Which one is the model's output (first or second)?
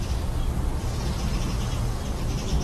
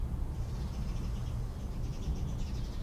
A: first